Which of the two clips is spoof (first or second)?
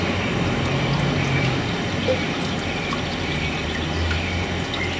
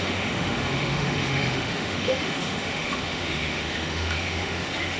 second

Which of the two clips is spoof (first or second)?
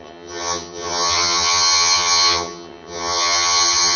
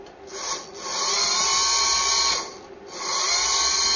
first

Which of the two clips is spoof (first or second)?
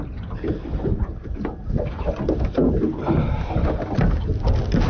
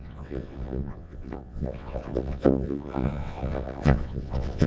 second